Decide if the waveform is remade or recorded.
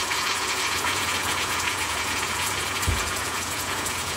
remade